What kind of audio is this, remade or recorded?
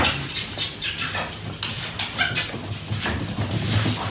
recorded